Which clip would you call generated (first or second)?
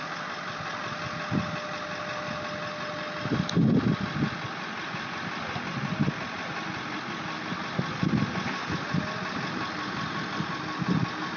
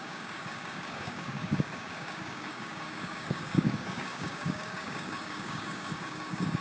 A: second